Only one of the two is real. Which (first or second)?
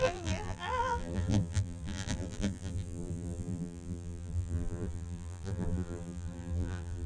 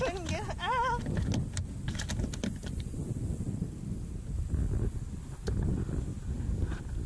second